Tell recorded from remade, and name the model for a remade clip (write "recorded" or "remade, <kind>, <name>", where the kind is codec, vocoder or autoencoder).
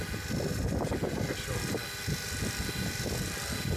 recorded